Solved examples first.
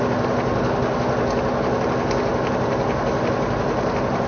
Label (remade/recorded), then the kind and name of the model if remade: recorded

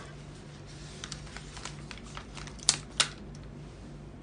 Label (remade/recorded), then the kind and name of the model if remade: recorded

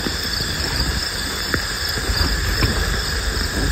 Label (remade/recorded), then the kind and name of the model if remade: remade, vocoder, BigVGAN v2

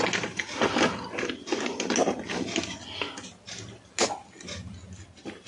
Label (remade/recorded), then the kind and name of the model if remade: recorded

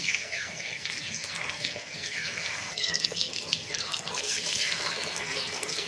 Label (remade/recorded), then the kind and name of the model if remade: remade, codec, SNAC